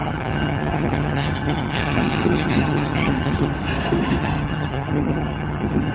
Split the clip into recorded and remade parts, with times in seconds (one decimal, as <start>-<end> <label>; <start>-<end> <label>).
0.0-3.5 remade; 3.5-4.2 recorded; 4.2-5.9 remade